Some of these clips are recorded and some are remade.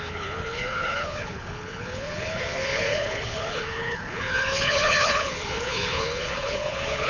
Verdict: remade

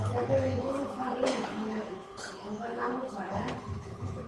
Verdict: remade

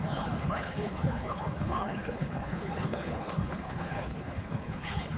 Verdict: remade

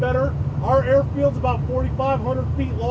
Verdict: recorded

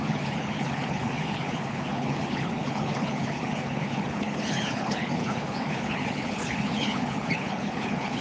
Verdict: remade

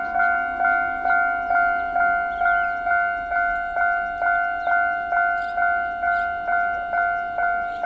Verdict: recorded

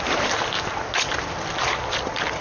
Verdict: recorded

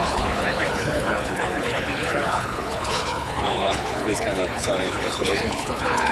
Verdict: remade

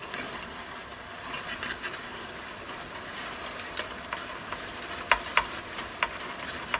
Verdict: recorded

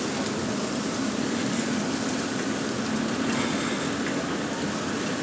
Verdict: recorded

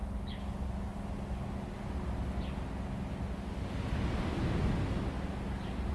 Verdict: recorded